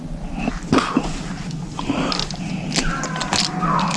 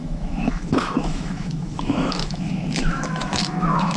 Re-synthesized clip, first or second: second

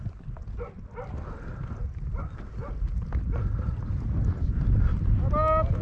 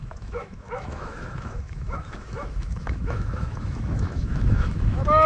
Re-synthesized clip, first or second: second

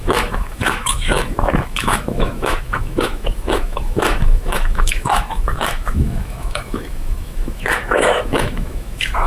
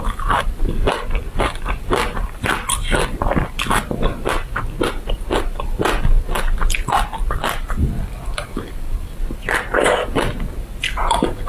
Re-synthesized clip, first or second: first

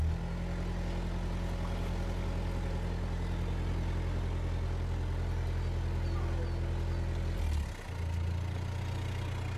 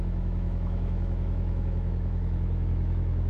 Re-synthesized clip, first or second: second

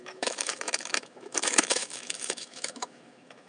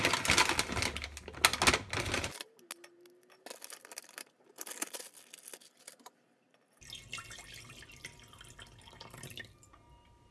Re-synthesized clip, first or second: first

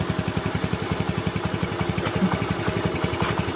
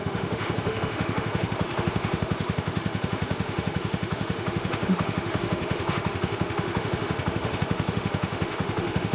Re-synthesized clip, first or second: second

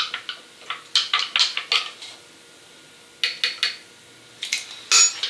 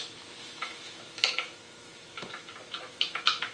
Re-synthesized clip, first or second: second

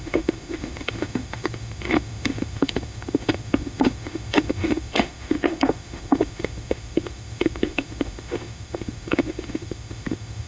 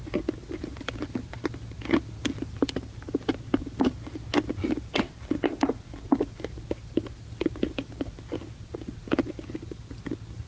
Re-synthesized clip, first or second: first